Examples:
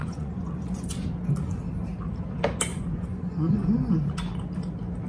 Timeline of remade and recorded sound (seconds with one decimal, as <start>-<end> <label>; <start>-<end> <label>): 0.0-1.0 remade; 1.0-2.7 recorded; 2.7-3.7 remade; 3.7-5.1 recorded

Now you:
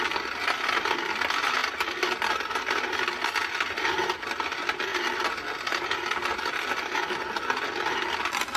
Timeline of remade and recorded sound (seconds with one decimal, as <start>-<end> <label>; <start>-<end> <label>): 0.0-8.6 recorded

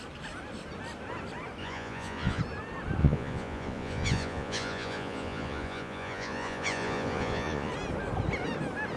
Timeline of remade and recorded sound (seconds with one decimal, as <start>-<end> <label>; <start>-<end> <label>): 0.0-1.6 recorded; 1.6-2.4 remade; 2.4-3.0 recorded; 3.0-7.7 remade; 7.7-9.0 recorded

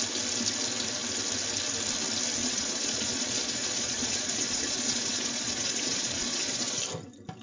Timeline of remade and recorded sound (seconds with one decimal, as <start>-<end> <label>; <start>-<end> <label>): 0.0-2.4 recorded; 2.4-6.8 remade; 6.8-7.4 recorded

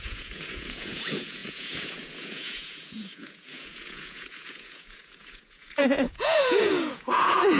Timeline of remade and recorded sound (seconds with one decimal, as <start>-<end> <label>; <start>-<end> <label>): 0.0-7.6 remade